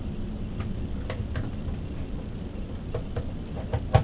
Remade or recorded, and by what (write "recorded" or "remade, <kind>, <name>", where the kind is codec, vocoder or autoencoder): recorded